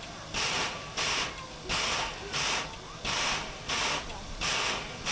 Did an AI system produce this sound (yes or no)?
no